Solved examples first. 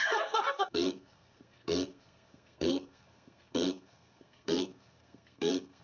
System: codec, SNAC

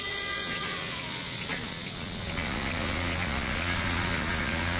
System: vocoder, Vocos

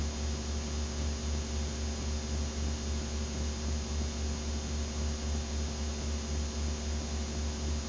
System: none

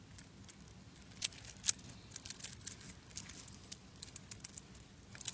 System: none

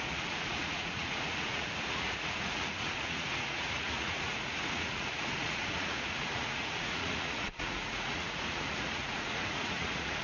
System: vocoder, Vocos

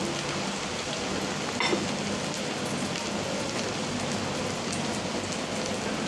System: none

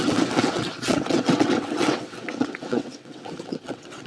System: vocoder, WaveNeXt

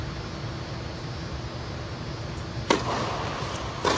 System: none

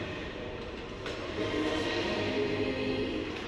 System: none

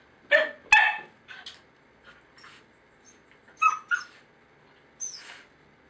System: none